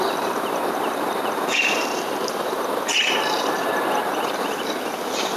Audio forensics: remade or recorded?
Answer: remade